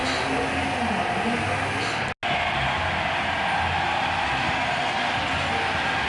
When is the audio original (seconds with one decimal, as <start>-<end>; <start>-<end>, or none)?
0.5-6.1